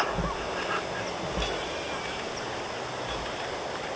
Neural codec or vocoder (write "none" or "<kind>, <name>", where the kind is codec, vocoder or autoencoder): none